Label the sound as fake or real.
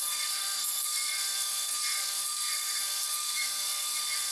fake